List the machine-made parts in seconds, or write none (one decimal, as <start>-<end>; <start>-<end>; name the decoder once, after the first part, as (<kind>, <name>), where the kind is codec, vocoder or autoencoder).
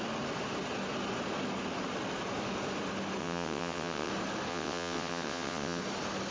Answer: 3.2-4.1 (vocoder, WaveNeXt); 4.5-5.8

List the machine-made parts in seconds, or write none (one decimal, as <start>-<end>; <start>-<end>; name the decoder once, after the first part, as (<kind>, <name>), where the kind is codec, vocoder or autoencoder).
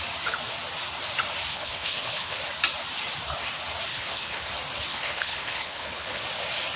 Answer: 1.5-2.4 (codec, HILCodec); 3.9-4.5; 4.9-6.2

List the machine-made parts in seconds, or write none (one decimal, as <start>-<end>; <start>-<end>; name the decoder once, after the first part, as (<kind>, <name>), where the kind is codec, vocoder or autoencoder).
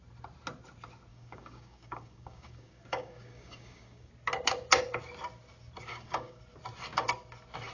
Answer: 1.1-4.1 (codec, DAC); 5.9-6.4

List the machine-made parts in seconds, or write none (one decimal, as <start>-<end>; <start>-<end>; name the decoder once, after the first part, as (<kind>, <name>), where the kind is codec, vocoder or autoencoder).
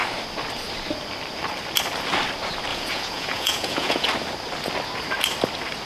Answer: 2.7-4.1 (vocoder, Vocos)